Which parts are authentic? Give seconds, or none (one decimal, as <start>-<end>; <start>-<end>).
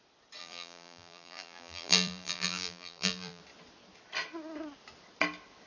0.0-0.4; 3.4-5.7